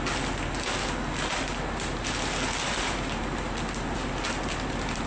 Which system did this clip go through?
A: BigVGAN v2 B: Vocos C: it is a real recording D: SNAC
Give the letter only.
C